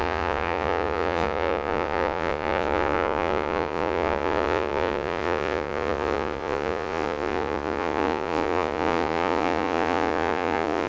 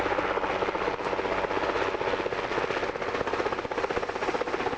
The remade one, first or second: first